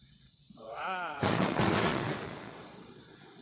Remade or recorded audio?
remade